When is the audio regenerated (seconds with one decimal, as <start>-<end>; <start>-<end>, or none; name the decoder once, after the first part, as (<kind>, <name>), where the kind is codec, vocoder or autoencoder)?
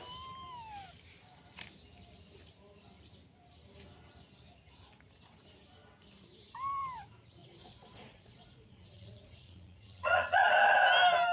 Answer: 7.4-10.5 (vocoder, Vocos)